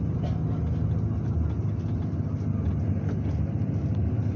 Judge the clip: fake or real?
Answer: real